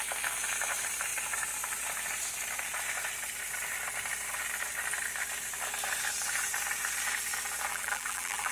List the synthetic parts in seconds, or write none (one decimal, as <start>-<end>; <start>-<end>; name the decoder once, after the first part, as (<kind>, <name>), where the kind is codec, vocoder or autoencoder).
7.7-8.5 (vocoder, BigVGAN v2)